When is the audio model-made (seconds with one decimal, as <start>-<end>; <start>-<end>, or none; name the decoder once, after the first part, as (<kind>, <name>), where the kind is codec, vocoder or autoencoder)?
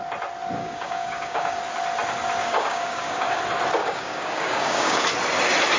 0.6-1.6 (codec, DAC); 2.4-3.4; 3.8-5.0